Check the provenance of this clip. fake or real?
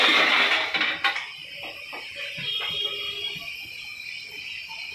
real